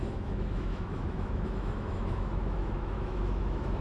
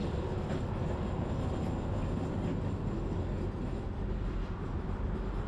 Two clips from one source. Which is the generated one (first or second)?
first